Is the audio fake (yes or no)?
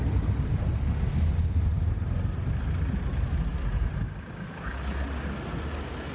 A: no